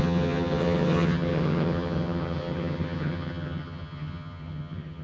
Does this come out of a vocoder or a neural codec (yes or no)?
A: yes